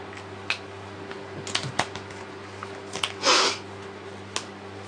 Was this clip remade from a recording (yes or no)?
no